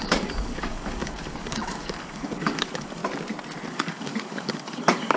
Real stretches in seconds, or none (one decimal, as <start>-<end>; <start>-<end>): 3.0-3.7